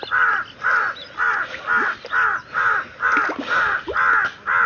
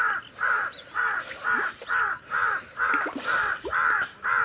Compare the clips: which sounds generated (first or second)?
second